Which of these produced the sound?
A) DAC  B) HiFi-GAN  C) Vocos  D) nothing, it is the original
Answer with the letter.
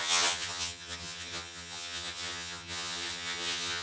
B